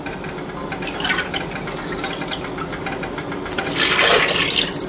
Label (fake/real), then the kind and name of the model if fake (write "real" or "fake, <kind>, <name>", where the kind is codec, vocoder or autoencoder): real